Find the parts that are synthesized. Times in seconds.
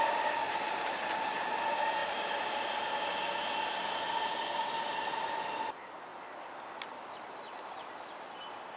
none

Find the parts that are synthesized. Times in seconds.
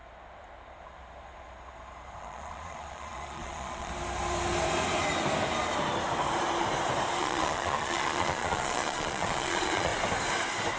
2.2-3.9 (vocoder, Vocos); 7.2-9.9